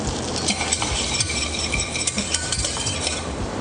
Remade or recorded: remade